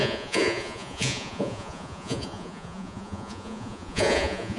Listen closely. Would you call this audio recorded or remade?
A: remade